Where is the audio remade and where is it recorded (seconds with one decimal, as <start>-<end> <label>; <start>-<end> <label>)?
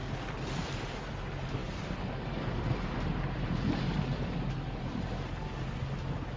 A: 0.0-1.6 recorded; 1.6-5.3 remade; 5.3-6.4 recorded